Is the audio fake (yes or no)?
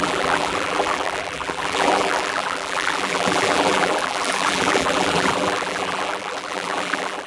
yes